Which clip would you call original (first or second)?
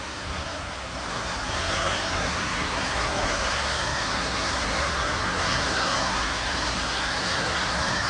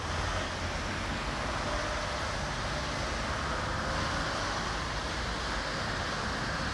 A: second